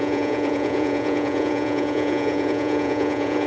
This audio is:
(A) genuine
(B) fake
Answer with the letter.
B